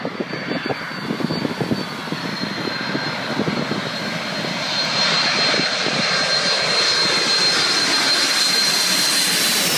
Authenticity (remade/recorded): recorded